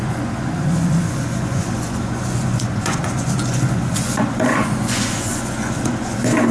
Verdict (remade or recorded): remade